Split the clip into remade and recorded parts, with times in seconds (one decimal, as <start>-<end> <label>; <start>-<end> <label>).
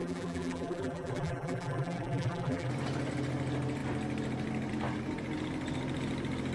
0.0-2.7 remade; 2.7-6.5 recorded